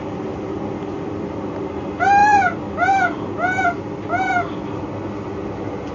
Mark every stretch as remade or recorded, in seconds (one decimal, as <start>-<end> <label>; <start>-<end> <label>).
0.0-5.9 recorded